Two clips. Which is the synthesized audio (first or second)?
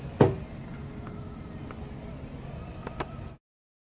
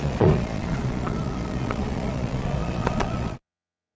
second